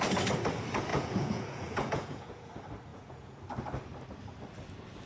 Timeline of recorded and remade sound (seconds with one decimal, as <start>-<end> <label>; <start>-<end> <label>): 0.0-0.9 recorded; 0.9-2.5 remade; 2.5-2.9 recorded; 2.9-3.4 remade; 3.4-5.1 recorded

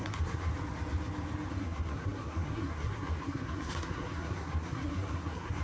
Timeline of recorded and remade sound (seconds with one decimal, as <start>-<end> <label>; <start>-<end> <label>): 0.0-0.5 remade; 0.5-1.5 recorded; 1.5-5.6 remade

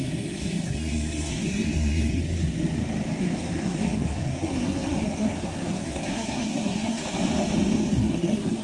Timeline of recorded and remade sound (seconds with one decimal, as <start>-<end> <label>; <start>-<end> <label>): 0.0-2.2 remade; 2.2-3.2 recorded; 3.2-7.0 remade; 7.0-7.9 recorded; 7.9-8.6 remade

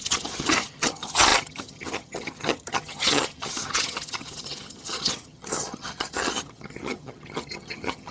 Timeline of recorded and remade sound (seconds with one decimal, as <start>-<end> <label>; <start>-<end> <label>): 0.0-8.1 remade

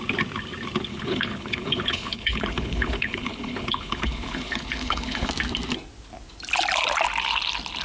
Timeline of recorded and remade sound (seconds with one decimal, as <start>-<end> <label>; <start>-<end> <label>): 0.0-0.9 recorded; 0.9-5.3 remade; 5.3-7.8 recorded

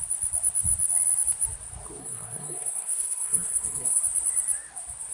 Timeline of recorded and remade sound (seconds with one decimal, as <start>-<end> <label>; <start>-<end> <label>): 0.0-2.0 recorded; 2.0-4.0 remade; 4.0-5.1 recorded

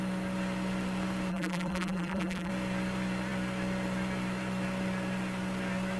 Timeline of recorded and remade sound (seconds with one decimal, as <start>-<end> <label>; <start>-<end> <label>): 0.0-1.3 recorded; 1.3-2.5 remade; 2.5-6.0 recorded

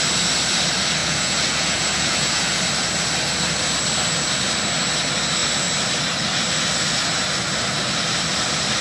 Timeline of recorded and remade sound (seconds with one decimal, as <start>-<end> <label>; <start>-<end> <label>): 0.0-1.0 recorded; 1.0-2.6 remade; 2.6-8.8 recorded